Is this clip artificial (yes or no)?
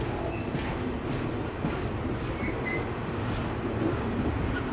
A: no